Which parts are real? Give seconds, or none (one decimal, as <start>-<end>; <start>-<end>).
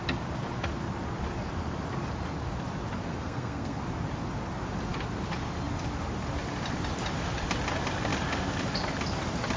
0.0-3.1; 3.8-9.6